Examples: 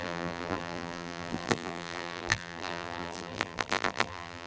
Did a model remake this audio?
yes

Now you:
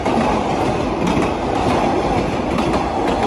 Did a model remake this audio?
no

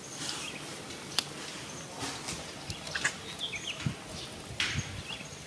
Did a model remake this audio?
no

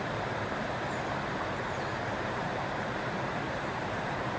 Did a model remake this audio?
yes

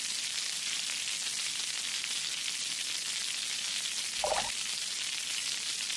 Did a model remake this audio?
no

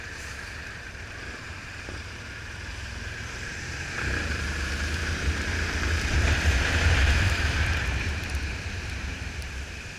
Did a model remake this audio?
yes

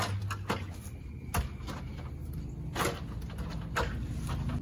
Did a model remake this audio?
no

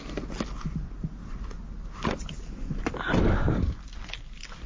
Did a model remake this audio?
no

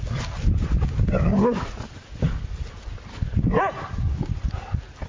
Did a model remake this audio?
no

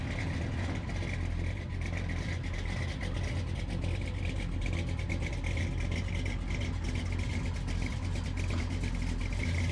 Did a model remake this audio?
no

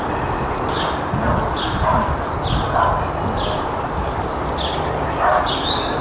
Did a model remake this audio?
no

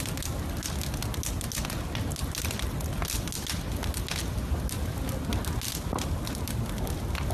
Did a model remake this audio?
no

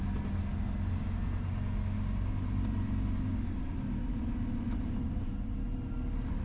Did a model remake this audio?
no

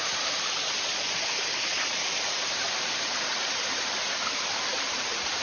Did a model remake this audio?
yes